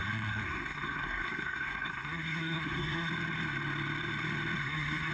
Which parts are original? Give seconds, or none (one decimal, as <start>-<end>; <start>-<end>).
3.1-4.6